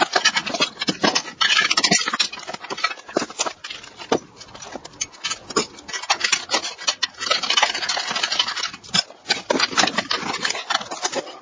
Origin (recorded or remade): recorded